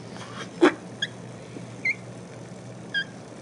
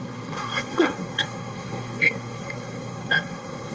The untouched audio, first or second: first